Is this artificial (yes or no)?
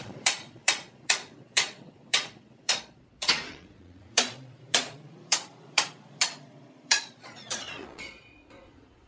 yes